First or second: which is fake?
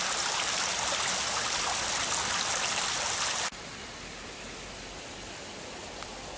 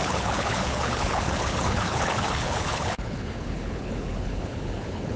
second